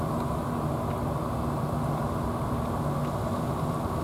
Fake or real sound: real